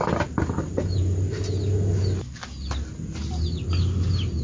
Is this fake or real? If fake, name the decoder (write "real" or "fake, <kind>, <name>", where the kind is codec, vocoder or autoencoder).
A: real